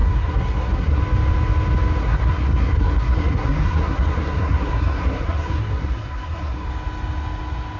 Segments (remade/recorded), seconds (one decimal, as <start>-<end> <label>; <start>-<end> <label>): 0.0-1.0 remade; 1.0-2.0 recorded; 2.0-6.7 remade; 6.7-7.8 recorded